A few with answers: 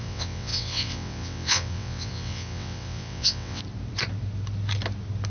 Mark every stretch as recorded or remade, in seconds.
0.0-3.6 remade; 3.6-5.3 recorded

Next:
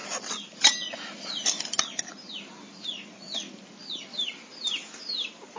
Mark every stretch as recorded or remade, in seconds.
0.0-5.6 recorded

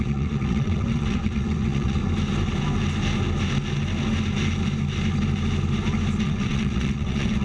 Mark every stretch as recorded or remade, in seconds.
0.0-2.0 remade; 2.0-6.2 recorded; 6.2-7.4 remade

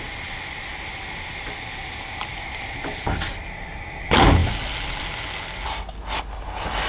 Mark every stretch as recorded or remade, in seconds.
0.0-6.9 recorded